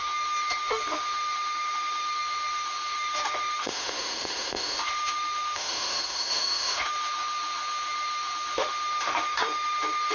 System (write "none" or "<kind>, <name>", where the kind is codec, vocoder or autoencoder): autoencoder, DAC-VAE